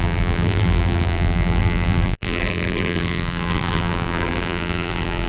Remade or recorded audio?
remade